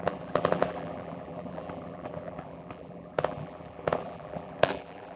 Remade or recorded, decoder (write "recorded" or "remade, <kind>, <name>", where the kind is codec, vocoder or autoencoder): remade, vocoder, BigVGAN v2